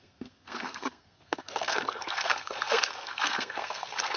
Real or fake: fake